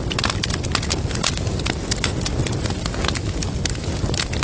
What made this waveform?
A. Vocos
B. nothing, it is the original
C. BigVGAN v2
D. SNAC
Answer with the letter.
B